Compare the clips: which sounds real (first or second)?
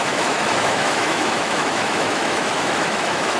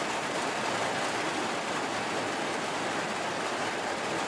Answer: second